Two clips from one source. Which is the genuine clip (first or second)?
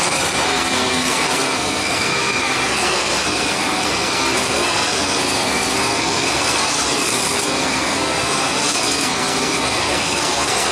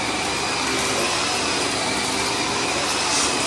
second